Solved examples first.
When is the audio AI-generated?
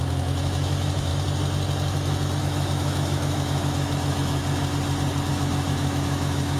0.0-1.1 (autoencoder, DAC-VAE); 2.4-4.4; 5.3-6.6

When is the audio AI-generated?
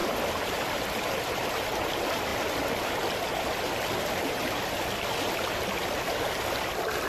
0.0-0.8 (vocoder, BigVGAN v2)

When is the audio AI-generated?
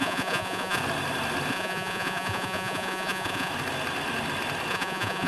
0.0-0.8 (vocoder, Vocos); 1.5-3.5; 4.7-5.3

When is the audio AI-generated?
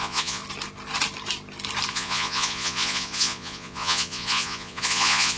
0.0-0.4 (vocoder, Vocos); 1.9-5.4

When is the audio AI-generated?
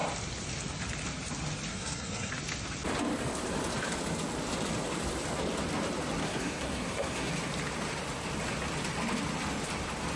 1.7-2.3 (codec, SNAC); 6.2-7.3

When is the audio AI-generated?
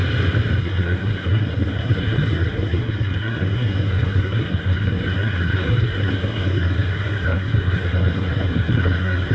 0.6-9.3 (codec, SNAC)